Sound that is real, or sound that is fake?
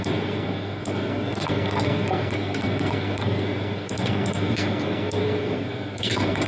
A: fake